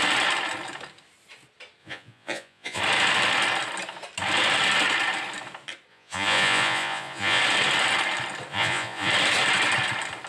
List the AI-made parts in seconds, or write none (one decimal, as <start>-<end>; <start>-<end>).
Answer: 1.8-2.8; 5.9-7.4; 8.5-9.1